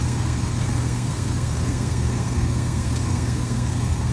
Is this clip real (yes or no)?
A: no